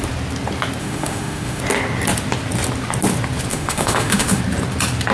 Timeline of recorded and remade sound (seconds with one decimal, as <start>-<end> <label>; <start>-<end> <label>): 0.0-0.8 recorded; 0.8-1.6 remade; 1.6-3.5 recorded; 3.5-4.4 remade; 4.4-5.1 recorded